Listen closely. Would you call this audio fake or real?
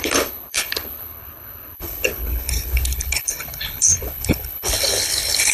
fake